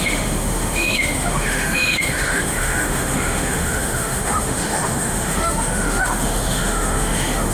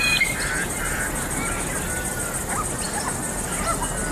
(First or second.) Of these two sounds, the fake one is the first